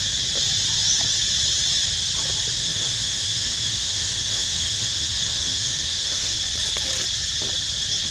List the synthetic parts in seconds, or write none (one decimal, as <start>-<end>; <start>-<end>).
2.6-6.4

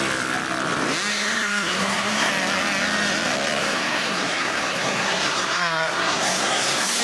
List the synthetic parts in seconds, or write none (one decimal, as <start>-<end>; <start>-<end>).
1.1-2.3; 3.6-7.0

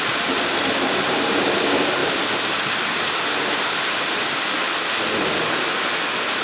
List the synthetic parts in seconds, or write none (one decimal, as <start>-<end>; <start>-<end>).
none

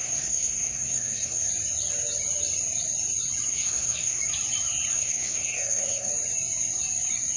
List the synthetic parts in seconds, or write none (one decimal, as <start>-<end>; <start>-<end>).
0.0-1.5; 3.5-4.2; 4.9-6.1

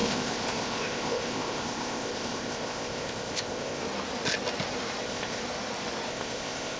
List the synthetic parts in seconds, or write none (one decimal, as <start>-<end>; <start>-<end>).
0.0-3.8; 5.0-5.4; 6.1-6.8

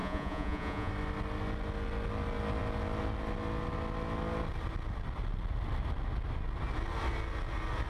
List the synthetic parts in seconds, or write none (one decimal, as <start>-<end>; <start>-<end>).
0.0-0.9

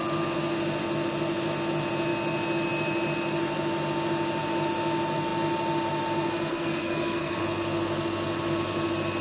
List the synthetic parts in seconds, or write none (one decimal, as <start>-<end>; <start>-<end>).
6.5-7.4

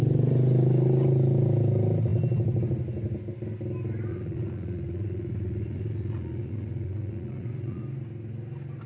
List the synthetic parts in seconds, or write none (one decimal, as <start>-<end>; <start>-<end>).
4.1-7.8